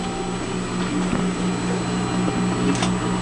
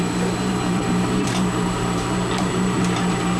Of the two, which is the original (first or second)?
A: first